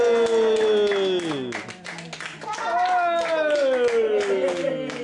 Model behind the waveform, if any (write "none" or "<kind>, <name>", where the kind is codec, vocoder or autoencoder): none